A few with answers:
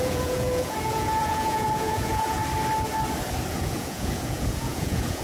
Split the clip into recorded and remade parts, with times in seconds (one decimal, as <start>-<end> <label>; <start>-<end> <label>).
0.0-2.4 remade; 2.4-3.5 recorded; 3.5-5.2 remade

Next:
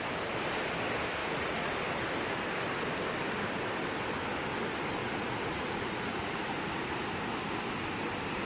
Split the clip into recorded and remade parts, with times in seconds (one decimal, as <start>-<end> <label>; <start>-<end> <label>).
0.0-1.2 recorded; 1.2-1.7 remade; 1.7-5.0 recorded; 5.0-6.6 remade; 6.6-8.5 recorded

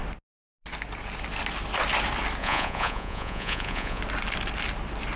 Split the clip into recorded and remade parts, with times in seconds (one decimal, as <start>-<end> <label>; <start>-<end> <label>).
0.0-2.4 recorded; 2.4-4.0 remade; 4.0-5.2 recorded

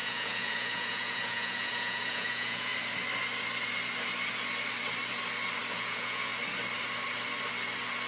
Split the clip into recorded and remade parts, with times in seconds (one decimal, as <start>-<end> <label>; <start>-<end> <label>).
0.0-2.7 remade; 2.7-5.7 recorded; 5.7-6.3 remade; 6.3-8.1 recorded

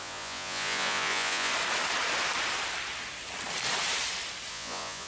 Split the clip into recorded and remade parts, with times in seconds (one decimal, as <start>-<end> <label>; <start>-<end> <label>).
0.0-1.5 remade; 1.5-4.5 recorded; 4.5-5.1 remade

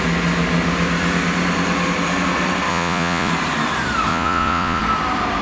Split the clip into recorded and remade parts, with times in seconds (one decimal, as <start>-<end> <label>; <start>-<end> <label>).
0.0-2.7 recorded; 2.7-3.3 remade; 3.3-4.1 recorded; 4.1-4.8 remade; 4.8-5.4 recorded